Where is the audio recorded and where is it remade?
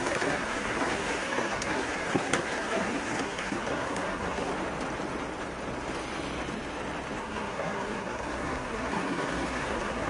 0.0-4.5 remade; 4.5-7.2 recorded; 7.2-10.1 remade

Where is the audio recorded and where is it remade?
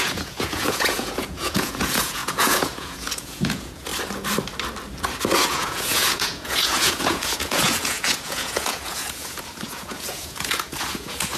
0.0-3.9 remade; 3.9-5.5 recorded; 5.5-11.4 remade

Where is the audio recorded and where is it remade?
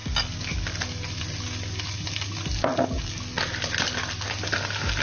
0.0-5.0 recorded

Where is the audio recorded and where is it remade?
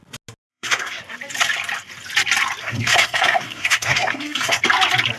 0.0-0.5 recorded; 0.5-1.0 remade; 1.0-2.6 recorded; 2.6-4.6 remade; 4.6-5.2 recorded